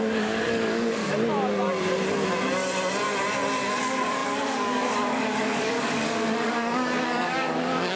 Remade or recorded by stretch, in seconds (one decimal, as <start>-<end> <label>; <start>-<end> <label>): 0.0-1.0 remade; 1.0-3.8 recorded; 3.8-8.0 remade